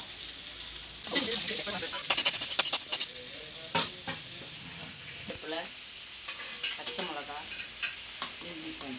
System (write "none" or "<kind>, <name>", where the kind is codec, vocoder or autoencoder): none